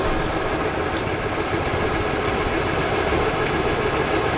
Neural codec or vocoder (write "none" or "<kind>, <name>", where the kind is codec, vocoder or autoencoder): none